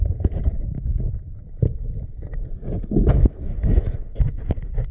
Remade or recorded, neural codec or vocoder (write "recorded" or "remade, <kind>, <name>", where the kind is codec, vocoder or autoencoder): recorded